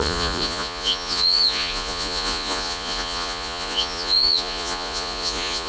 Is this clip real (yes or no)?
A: no